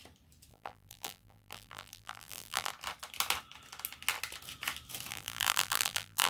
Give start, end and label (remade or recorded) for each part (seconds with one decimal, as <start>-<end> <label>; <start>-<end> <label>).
0.0-0.5 recorded; 0.5-2.7 remade; 2.7-5.1 recorded; 5.1-6.3 remade